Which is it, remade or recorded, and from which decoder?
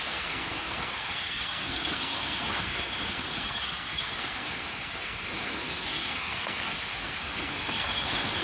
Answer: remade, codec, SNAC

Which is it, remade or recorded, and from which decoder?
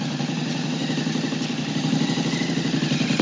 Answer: recorded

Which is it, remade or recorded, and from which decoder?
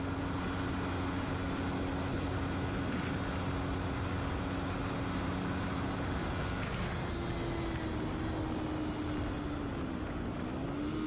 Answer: recorded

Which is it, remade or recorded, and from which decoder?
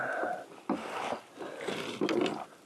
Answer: recorded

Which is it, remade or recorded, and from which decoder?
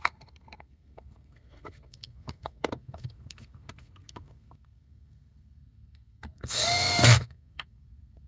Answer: remade, codec, SNAC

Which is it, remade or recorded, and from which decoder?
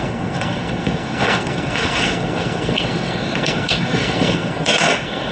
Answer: remade, codec, SNAC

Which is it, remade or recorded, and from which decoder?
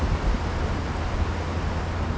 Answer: recorded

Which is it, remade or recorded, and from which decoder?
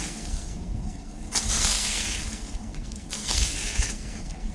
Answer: remade, codec, SNAC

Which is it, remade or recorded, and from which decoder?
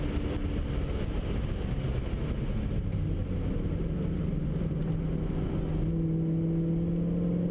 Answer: recorded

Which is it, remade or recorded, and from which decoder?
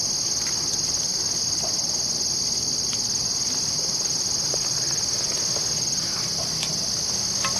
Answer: recorded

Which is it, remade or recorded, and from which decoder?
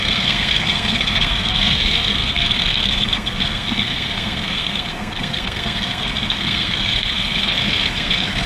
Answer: remade, codec, SNAC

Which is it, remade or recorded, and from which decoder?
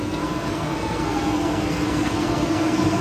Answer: remade, codec, SNAC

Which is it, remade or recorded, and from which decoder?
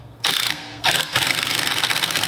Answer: remade, codec, SNAC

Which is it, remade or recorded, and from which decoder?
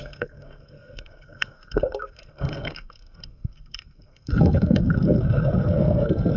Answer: remade, codec, SNAC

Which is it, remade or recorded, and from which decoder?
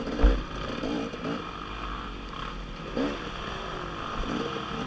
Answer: recorded